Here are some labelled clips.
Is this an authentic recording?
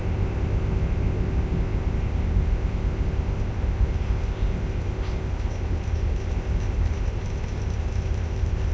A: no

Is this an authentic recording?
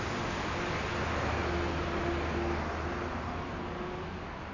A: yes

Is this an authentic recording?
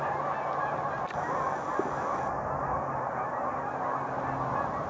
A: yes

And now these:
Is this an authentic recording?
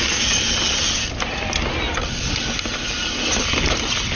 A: yes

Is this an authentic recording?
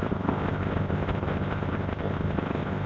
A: no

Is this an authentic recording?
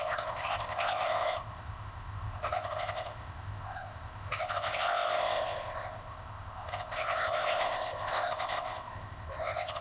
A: no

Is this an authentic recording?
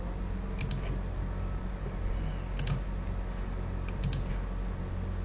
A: yes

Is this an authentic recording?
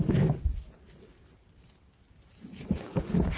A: yes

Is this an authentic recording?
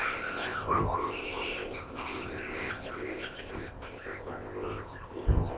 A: no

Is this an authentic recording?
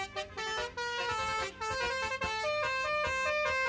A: yes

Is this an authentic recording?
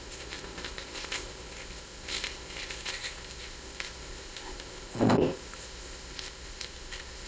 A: no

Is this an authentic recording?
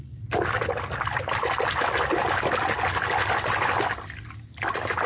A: yes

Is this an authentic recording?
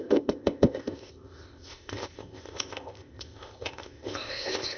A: no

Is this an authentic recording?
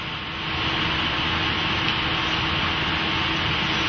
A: yes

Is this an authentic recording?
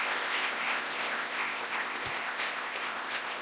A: no